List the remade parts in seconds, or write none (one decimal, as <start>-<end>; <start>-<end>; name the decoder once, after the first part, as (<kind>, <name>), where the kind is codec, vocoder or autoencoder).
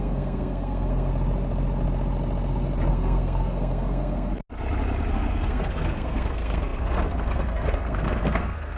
0.0-1.1 (codec, SNAC); 2.9-4.4; 5.1-8.8